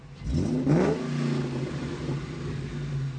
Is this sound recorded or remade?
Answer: recorded